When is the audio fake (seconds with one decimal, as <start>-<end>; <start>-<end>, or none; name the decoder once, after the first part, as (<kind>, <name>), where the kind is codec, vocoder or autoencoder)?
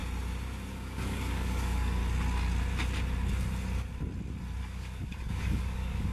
0.7-2.0 (codec, DAC); 4.6-6.1